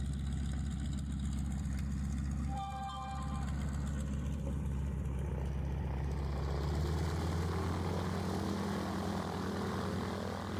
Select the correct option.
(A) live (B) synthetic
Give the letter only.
A